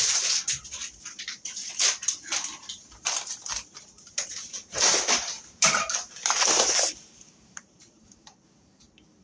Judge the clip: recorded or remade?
remade